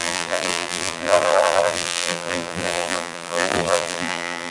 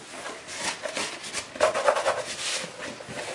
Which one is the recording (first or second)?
second